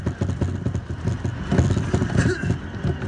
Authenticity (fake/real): real